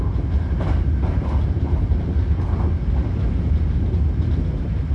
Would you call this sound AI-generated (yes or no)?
no